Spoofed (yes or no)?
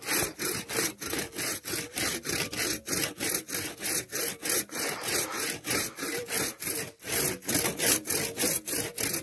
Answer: no